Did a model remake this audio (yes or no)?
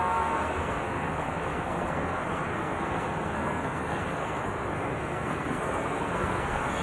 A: yes